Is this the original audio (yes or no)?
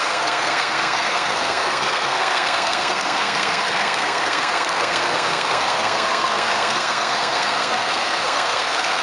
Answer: no